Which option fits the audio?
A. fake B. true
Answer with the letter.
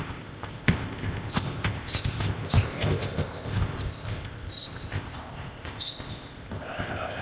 A